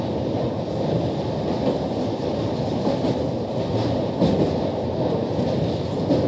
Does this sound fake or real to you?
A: real